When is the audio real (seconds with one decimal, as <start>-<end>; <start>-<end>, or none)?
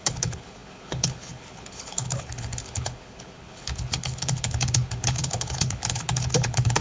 none